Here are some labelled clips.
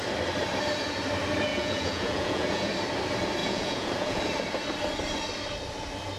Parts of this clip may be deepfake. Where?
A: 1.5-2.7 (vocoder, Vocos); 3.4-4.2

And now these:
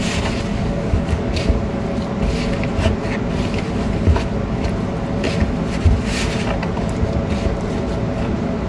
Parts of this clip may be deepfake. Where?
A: 0.5-1.4 (codec, DAC)

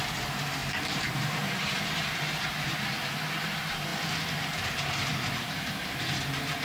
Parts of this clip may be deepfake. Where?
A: 0.6-2.9 (vocoder, BigVGAN v2)

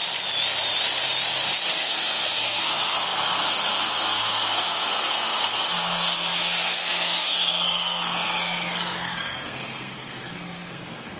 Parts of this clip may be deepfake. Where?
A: 1.7-11.2 (codec, SNAC)

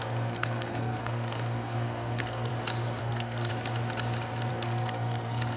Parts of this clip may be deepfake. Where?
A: 0.0-2.5 (codec, SNAC); 3.0-3.5; 4.5-5.6